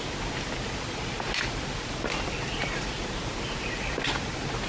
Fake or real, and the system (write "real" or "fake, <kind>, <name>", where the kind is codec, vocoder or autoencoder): real